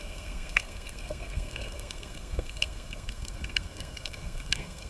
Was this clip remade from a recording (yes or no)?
yes